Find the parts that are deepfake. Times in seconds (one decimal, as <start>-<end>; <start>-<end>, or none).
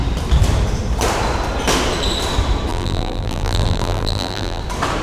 2.7-4.6